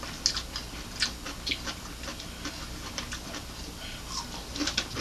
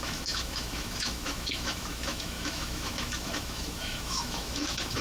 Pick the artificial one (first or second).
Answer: second